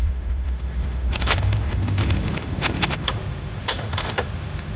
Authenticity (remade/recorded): remade